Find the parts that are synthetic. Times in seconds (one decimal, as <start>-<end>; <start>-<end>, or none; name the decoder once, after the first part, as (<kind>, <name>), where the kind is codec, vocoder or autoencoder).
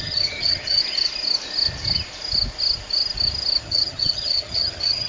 0.0-0.8 (vocoder, HiFi-GAN); 3.6-5.1